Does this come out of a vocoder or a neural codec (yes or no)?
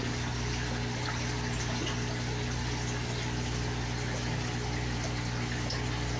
no